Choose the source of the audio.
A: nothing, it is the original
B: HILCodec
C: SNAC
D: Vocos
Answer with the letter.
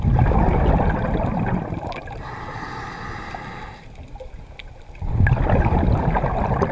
A